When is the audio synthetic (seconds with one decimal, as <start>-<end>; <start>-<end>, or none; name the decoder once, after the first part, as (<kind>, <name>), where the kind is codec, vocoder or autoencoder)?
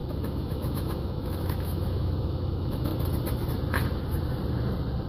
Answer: 0.0-2.9 (autoencoder, DAC-VAE)